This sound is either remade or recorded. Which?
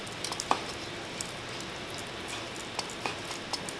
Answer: recorded